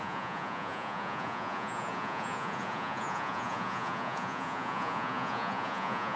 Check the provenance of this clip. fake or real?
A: fake